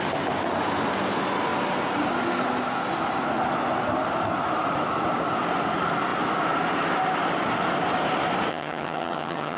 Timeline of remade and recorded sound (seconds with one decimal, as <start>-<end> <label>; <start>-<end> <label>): 0.0-8.5 recorded; 8.5-9.6 remade